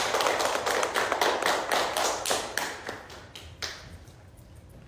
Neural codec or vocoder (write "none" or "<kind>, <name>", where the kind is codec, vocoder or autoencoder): none